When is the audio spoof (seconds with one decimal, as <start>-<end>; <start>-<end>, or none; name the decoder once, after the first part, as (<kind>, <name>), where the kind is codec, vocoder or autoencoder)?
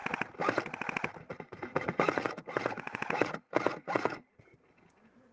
1.3-4.5 (vocoder, Vocos)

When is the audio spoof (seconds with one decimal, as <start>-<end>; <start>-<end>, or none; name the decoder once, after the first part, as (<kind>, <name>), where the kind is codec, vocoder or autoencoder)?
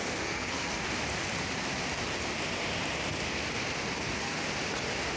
0.0-0.9 (codec, SNAC); 4.0-4.4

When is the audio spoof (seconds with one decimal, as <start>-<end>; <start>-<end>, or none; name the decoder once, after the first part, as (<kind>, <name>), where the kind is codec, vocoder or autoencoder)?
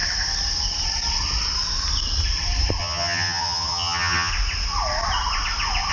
2.8-4.3 (vocoder, HiFi-GAN)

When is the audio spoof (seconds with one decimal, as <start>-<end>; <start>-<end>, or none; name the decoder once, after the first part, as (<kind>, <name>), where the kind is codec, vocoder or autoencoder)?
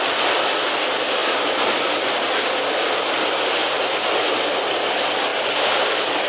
1.2-2.0 (vocoder, BigVGAN v2); 3.6-4.1; 5.3-6.3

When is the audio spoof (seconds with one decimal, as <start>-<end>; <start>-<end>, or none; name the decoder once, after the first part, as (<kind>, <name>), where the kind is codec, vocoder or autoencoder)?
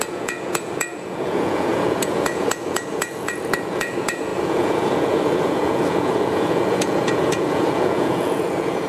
0.0-8.9 (vocoder, Vocos)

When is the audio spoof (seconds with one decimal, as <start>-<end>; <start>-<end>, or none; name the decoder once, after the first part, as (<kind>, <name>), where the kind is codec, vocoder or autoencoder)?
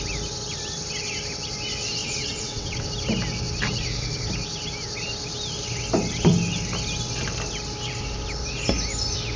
2.0-2.9 (vocoder, WaveNeXt)